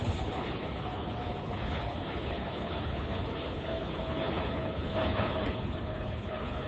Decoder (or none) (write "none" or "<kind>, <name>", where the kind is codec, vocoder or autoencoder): codec, HILCodec